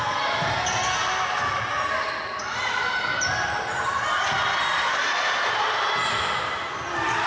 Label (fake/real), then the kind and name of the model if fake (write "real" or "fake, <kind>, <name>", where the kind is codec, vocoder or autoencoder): real